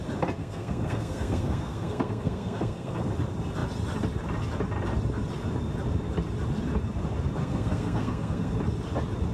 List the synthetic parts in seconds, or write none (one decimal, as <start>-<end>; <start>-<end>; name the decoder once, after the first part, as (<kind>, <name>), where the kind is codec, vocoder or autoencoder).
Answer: 0.4-3.1 (codec, SNAC); 7.4-8.6